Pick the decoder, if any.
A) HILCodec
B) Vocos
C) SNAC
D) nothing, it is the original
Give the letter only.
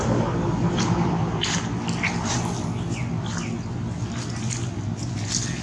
D